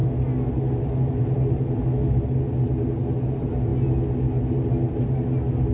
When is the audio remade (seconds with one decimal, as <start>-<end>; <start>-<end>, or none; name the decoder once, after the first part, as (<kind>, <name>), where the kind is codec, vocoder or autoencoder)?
none